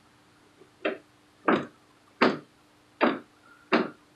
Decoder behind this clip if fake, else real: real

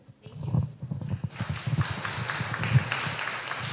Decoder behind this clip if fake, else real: real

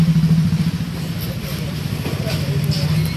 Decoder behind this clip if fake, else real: real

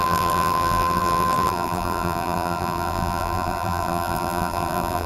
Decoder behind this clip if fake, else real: fake, vocoder, BigVGAN v2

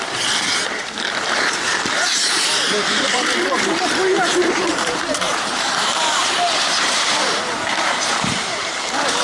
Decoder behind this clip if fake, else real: fake, vocoder, BigVGAN v2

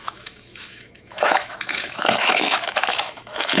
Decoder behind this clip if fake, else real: fake, autoencoder, DAC-VAE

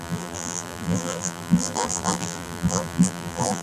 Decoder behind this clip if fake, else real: fake, vocoder, BigVGAN v2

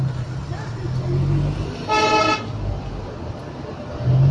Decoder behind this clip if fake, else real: real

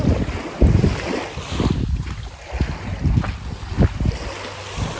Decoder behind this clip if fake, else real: real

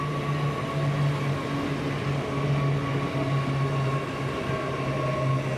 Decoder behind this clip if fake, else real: real